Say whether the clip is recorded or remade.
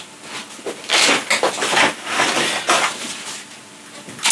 recorded